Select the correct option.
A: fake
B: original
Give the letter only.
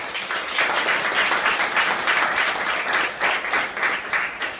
B